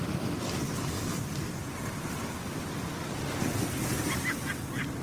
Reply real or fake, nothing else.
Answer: real